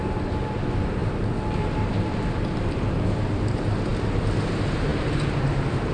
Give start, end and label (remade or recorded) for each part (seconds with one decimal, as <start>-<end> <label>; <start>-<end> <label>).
0.0-5.9 recorded